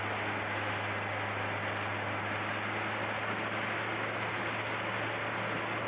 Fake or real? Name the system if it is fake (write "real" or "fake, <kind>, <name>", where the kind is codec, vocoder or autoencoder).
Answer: real